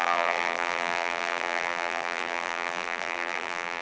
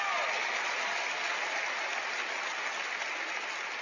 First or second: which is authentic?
second